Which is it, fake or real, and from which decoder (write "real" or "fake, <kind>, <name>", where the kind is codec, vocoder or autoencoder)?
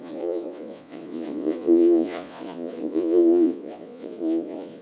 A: fake, vocoder, Vocos